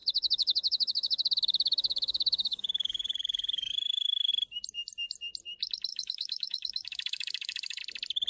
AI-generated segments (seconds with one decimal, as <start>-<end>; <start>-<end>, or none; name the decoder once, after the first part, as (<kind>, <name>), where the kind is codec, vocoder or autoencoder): 0.0-4.3 (codec, DAC); 5.9-7.8